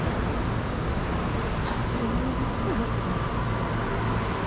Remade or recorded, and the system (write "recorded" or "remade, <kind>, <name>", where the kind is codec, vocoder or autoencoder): recorded